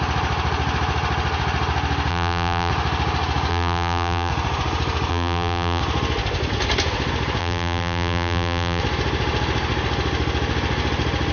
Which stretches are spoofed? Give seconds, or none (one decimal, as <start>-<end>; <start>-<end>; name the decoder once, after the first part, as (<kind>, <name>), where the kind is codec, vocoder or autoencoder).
2.1-2.7 (vocoder, BigVGAN v2); 3.5-4.3; 5.1-5.8; 7.4-8.8